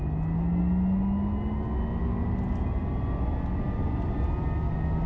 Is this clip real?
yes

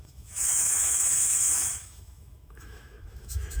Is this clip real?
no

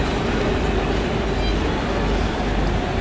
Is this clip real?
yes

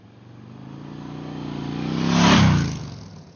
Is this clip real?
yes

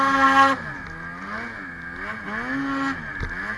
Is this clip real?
yes